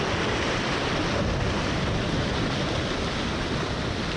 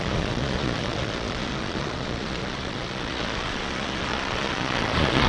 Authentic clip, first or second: first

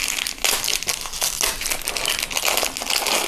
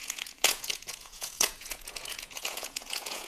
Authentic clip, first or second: first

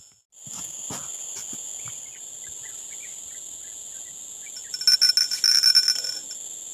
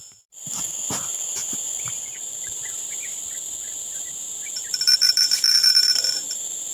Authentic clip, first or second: first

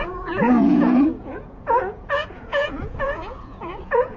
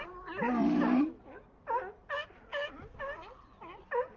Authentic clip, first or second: second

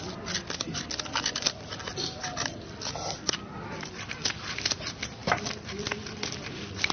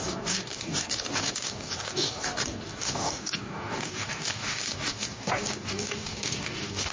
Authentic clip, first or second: first